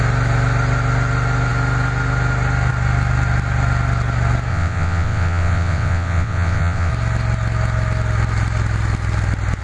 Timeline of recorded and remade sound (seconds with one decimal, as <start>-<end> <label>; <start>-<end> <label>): 0.0-4.5 recorded; 4.5-6.9 remade; 6.9-9.6 recorded